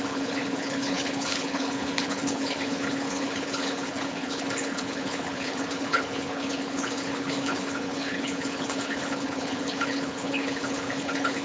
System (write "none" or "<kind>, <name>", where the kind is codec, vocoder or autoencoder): codec, HILCodec